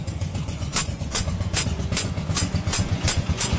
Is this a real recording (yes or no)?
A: no